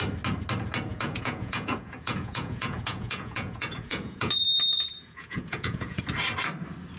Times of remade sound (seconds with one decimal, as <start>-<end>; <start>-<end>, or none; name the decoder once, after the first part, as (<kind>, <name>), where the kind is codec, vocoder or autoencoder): 0.9-4.3 (vocoder, Vocos); 4.7-6.0